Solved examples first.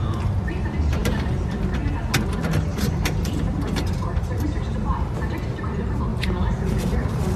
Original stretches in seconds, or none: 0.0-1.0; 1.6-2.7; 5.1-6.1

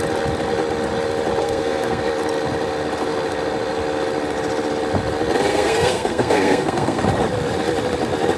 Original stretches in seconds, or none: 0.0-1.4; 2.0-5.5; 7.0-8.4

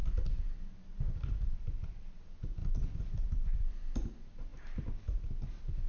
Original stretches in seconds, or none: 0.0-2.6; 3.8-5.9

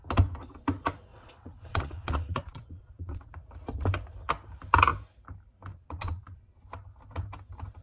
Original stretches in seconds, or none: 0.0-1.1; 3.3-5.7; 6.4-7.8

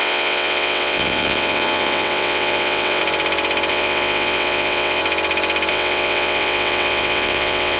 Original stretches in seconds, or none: 3.0-3.7; 5.0-5.7

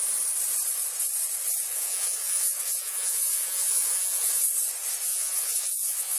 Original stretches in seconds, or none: 0.0-1.7; 4.4-5.1